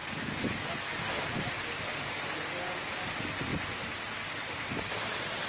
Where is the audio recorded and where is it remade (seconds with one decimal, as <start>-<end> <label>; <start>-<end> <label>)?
0.0-5.5 recorded